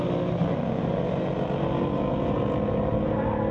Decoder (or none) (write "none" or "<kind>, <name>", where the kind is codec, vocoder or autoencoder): none